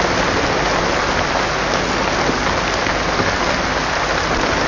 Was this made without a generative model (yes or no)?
yes